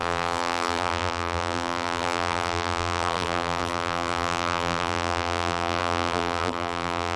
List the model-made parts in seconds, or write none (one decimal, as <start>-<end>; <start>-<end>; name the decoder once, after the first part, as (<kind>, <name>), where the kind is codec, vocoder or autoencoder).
0.0-7.2 (vocoder, BigVGAN v2)